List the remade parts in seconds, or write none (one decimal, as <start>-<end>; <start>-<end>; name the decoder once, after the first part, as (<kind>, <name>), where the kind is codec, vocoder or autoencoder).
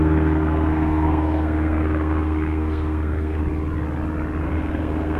0.0-3.4 (codec, SNAC); 4.4-5.2